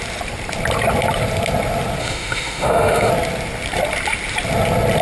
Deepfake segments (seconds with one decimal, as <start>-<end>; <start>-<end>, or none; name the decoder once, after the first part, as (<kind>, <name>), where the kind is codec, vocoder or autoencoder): 2.0-3.1 (autoencoder, DAC-VAE)